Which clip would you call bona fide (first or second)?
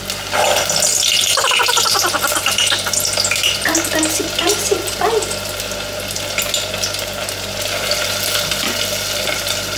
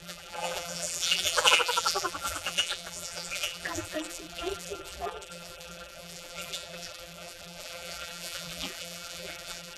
first